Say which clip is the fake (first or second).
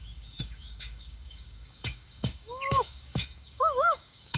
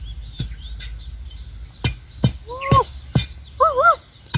first